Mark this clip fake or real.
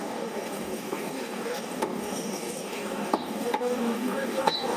fake